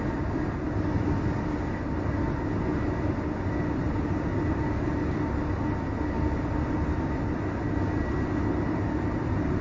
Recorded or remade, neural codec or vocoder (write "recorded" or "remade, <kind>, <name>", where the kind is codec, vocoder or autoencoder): recorded